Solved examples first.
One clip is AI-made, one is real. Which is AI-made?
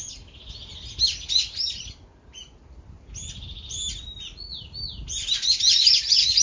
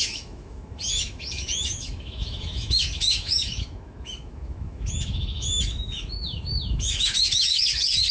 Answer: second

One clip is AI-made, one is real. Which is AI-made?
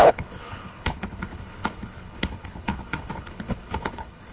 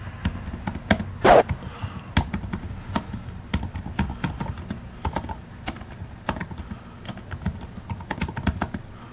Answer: first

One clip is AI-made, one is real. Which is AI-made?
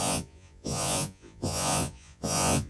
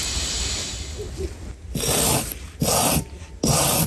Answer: first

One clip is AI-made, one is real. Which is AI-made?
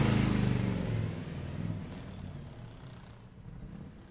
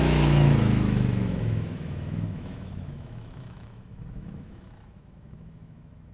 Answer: second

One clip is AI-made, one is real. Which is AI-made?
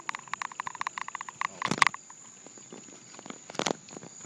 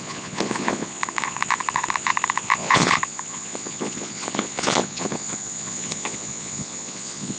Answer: second